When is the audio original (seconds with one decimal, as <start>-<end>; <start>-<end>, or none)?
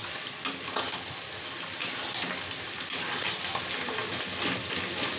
0.0-5.2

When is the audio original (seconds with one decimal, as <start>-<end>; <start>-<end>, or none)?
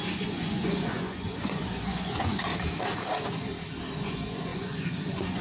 2.5-4.0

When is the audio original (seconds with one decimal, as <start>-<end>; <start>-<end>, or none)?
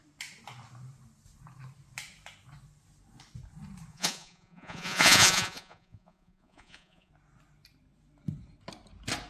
0.0-3.9; 7.1-9.3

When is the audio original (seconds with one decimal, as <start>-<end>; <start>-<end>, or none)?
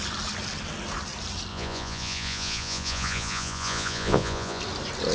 0.0-1.5; 4.6-5.1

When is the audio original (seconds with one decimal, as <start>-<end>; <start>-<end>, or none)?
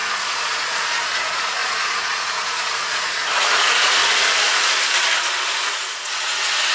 4.0-5.6